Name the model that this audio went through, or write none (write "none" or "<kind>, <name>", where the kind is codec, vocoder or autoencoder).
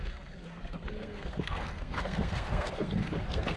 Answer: codec, SNAC